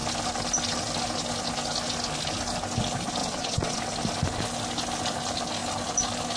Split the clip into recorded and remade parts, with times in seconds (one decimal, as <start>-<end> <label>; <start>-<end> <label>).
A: 0.0-3.2 recorded; 3.2-3.8 remade; 3.8-6.4 recorded